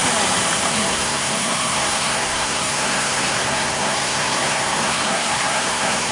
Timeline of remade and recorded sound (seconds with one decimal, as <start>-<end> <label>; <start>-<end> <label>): 0.0-0.7 recorded; 0.7-6.1 remade